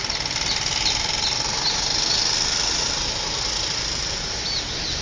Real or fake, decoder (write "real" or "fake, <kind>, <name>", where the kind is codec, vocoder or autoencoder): real